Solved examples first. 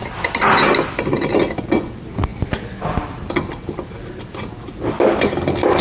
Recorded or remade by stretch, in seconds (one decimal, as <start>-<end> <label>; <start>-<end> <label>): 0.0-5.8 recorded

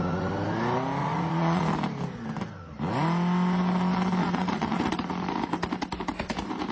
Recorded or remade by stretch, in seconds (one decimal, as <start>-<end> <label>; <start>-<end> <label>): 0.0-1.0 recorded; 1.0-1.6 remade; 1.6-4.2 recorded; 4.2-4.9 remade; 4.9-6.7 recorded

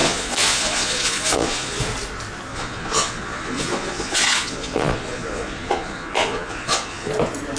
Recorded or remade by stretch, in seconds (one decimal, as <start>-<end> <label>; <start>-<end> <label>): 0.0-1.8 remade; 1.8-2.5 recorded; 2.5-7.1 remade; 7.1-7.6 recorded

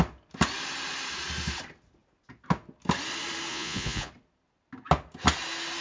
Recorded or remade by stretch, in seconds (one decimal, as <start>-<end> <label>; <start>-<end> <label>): 0.0-3.5 recorded; 3.5-4.1 remade; 4.1-5.8 recorded